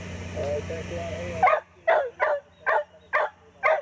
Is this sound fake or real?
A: real